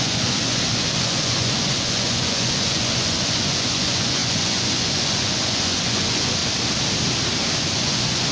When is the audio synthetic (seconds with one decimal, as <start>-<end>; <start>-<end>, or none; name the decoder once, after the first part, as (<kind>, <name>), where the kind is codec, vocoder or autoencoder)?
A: 0.0-6.4 (vocoder, Vocos); 7.6-8.3